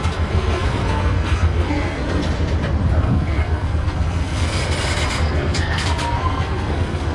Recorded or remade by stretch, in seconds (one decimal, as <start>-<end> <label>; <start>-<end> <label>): 0.0-2.2 remade; 2.2-3.0 recorded; 3.0-4.6 remade; 4.6-5.2 recorded; 5.2-7.1 remade